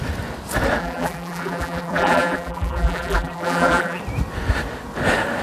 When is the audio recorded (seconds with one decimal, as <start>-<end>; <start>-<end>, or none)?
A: 0.0-0.8; 4.0-5.4